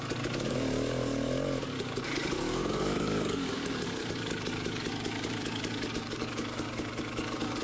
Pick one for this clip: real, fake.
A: fake